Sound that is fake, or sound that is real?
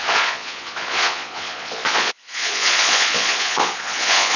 fake